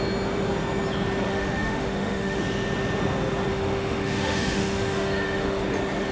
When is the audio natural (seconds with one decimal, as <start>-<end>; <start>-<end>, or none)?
0.0-1.3; 2.4-3.5; 5.6-6.1